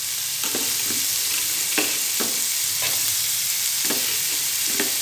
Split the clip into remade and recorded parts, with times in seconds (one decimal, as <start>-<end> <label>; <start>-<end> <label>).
0.0-5.0 recorded